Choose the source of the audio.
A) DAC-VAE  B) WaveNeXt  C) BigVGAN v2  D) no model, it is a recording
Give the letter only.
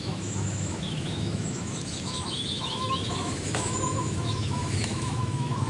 A